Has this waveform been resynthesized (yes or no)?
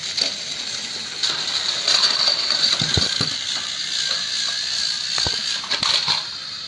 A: no